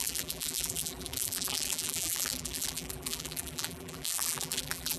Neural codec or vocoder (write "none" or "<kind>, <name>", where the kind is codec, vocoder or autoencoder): vocoder, BigVGAN v2